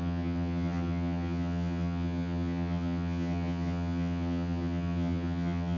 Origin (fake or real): fake